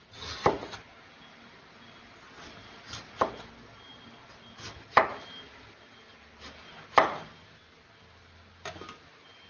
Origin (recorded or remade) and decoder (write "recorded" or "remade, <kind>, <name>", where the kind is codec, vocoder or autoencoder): recorded